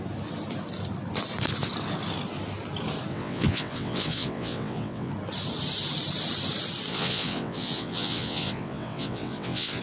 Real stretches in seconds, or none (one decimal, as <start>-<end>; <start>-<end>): 0.0-3.1; 5.1-6.9